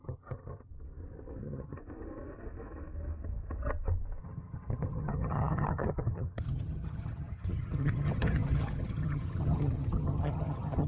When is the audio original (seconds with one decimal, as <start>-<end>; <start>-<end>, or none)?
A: 0.7-1.4; 1.8-4.2